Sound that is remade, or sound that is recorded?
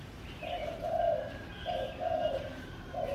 remade